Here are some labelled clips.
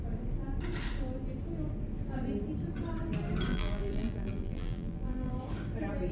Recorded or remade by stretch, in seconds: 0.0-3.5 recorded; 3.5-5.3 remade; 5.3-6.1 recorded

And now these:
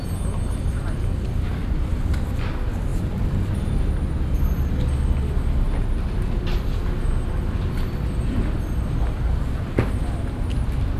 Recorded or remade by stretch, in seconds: 0.0-2.9 recorded; 2.9-3.9 remade; 3.9-11.0 recorded

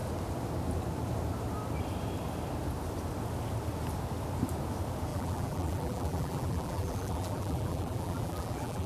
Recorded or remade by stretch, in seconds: 0.0-5.1 recorded; 5.1-8.9 remade

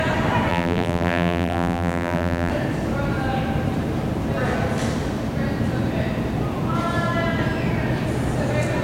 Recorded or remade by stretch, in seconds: 0.0-0.5 recorded; 0.5-2.5 remade; 2.5-8.8 recorded

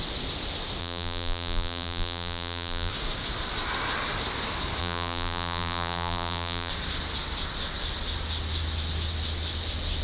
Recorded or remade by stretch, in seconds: 0.0-0.8 recorded; 0.8-2.9 remade; 2.9-4.8 recorded; 4.8-6.7 remade; 6.7-10.0 recorded

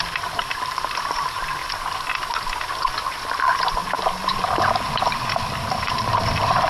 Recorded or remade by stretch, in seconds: 0.0-1.6 remade; 1.6-3.1 recorded; 3.1-3.8 remade; 3.8-5.7 recorded; 5.7-6.7 remade

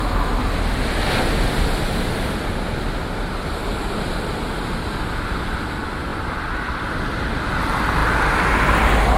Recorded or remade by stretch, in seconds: 0.0-0.4 recorded; 0.4-4.3 remade; 4.3-6.1 recorded; 6.1-7.5 remade; 7.5-9.2 recorded

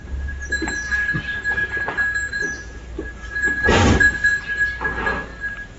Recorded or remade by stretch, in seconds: 0.0-1.6 remade; 1.6-2.3 recorded; 2.3-5.3 remade; 5.3-5.8 recorded